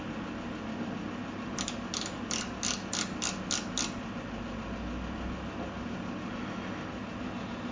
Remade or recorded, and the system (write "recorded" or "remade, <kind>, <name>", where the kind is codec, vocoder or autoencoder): recorded